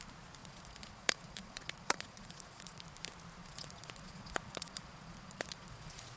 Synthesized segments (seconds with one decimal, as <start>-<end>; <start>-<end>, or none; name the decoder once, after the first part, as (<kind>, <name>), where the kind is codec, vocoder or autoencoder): 0.4-2.8 (vocoder, Vocos); 3.4-6.2